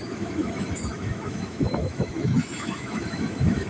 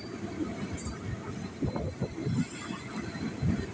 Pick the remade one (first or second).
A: first